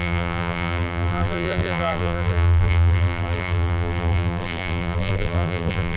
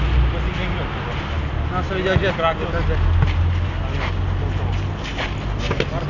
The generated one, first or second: first